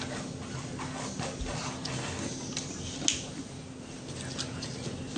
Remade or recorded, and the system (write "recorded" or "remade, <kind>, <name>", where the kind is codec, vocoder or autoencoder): recorded